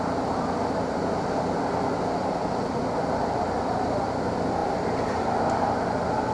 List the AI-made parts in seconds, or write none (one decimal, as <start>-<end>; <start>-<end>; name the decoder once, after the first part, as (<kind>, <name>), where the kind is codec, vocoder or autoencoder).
2.2-4.1 (vocoder, BigVGAN v2); 4.6-5.3